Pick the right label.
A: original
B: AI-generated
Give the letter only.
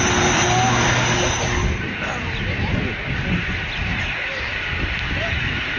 A